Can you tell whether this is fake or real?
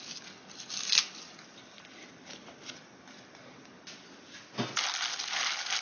real